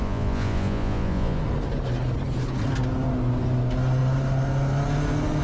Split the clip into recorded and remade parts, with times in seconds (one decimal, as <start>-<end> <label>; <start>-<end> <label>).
0.0-1.4 remade; 1.4-5.4 recorded